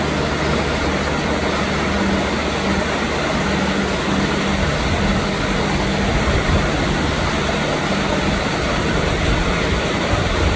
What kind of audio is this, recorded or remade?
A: recorded